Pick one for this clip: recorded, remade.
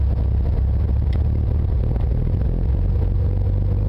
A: recorded